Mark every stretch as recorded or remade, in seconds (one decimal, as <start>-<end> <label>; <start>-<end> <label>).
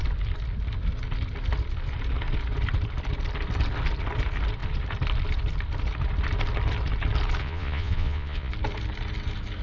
0.0-7.4 recorded; 7.4-8.5 remade; 8.5-9.6 recorded